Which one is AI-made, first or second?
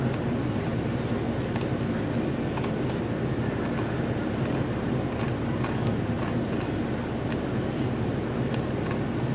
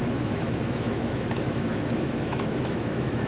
second